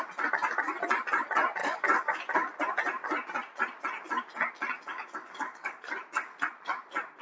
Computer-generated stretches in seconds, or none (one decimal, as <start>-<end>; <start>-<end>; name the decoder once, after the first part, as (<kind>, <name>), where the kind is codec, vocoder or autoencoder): 1.6-2.2 (codec, DAC); 4.9-5.9